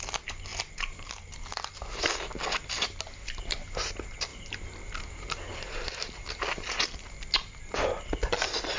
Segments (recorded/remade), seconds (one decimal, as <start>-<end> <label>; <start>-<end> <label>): 0.0-0.5 recorded; 0.5-1.7 remade; 1.7-4.3 recorded; 4.3-6.3 remade; 6.3-8.8 recorded